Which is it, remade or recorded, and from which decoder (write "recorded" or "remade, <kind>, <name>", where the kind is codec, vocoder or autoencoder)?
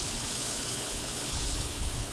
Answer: remade, codec, HILCodec